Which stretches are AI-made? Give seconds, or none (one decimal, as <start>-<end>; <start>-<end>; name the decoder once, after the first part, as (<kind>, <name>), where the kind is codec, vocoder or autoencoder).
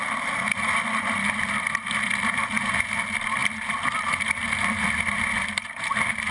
none